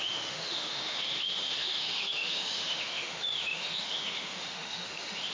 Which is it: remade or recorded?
remade